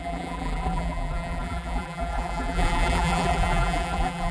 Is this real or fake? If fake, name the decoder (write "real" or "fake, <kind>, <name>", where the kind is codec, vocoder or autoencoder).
fake, vocoder, BigVGAN v2